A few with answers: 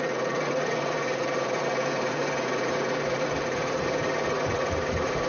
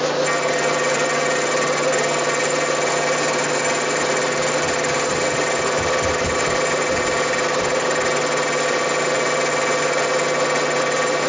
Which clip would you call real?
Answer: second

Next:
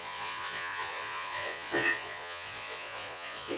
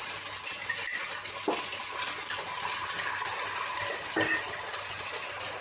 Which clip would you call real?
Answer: second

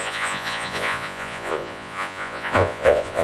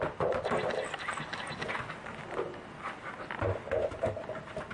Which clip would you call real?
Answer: second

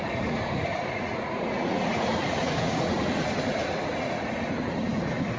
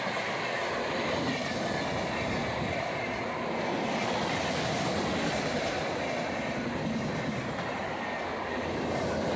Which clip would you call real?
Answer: second